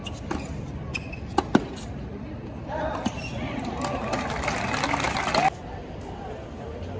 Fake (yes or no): no